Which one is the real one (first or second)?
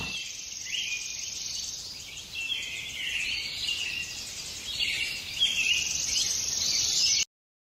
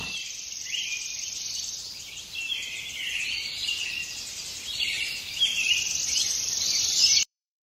first